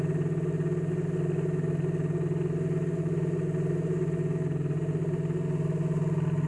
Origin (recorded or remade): recorded